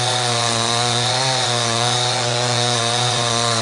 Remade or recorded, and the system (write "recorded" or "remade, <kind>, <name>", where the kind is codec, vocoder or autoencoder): remade, vocoder, Vocos